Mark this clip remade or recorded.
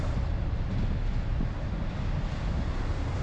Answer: recorded